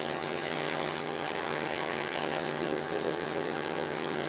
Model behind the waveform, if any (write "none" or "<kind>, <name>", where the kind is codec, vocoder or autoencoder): vocoder, HiFi-GAN